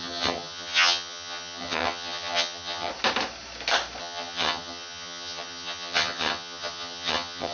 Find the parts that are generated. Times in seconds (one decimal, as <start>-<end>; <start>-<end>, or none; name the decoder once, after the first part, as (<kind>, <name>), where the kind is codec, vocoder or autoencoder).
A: 0.0-2.9 (vocoder, HiFi-GAN); 4.0-7.5

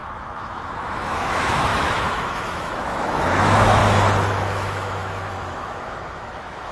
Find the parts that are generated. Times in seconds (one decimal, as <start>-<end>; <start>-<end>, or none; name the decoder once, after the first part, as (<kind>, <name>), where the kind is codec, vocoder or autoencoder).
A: 0.0-3.8 (autoencoder, DAC-VAE); 4.3-6.7